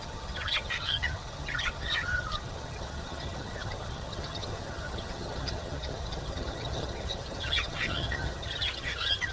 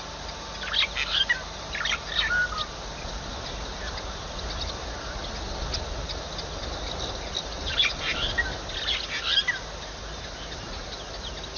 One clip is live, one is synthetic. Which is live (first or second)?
second